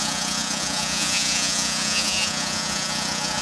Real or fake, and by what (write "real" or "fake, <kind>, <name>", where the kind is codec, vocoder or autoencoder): fake, vocoder, Vocos